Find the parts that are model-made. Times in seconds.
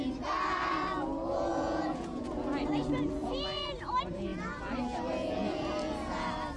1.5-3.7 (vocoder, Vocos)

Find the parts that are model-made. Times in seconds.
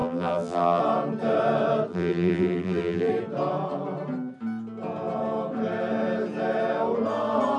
0.0-0.8 (vocoder, BigVGAN v2); 1.9-3.1